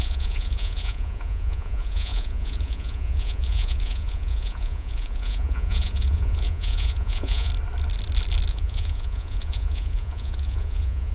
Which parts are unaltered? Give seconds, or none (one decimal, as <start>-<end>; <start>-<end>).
7.5-8.5